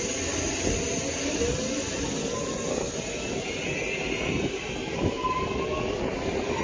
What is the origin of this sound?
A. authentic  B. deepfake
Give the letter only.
A